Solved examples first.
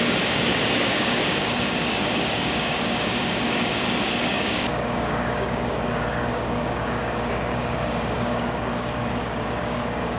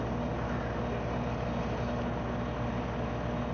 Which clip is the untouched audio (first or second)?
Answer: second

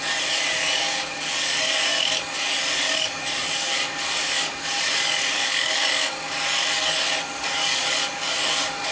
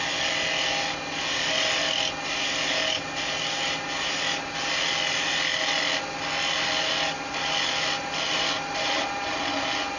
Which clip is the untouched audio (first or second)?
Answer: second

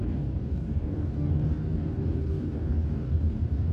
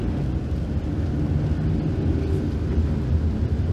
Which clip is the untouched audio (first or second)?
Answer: second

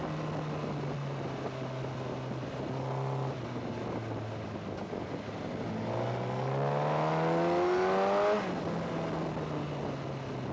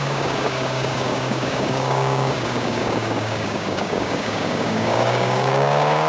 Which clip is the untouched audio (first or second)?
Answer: first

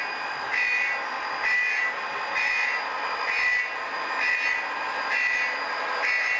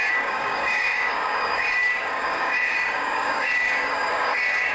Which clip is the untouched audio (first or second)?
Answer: first